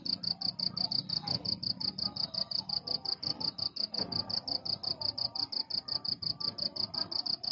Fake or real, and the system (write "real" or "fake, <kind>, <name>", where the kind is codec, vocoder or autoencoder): real